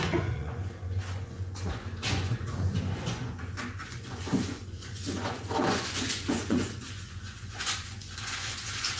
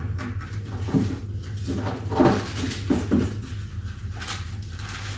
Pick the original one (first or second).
second